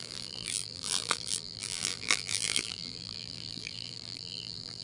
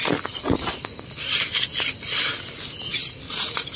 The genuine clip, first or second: second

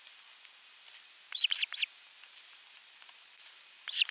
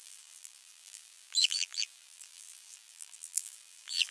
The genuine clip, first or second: first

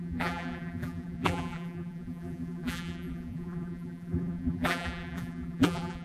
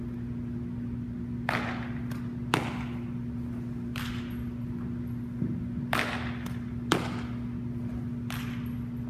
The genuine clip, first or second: second